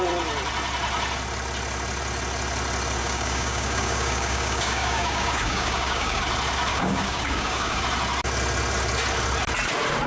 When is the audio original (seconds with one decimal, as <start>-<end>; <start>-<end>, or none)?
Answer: 0.0-3.0; 6.2-6.7; 7.8-10.1